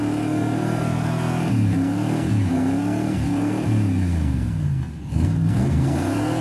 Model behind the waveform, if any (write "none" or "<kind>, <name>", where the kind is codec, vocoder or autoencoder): codec, SNAC